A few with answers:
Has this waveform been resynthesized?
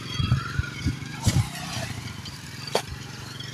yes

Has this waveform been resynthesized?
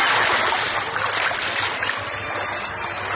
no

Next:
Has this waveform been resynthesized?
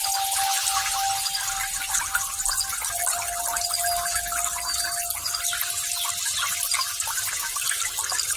no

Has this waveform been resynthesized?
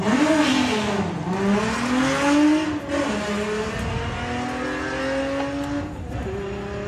no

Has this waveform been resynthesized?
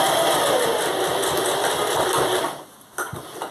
no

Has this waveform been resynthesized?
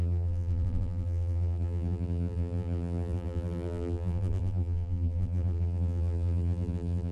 yes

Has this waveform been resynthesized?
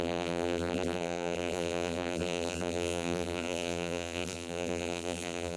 yes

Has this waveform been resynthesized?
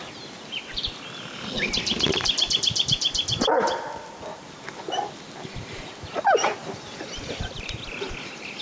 yes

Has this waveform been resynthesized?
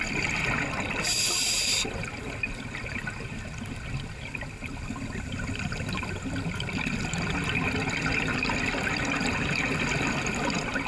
no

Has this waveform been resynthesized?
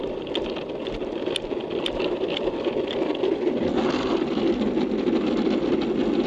no